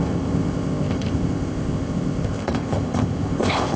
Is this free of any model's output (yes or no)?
no